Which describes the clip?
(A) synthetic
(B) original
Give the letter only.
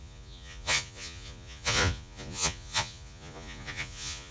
A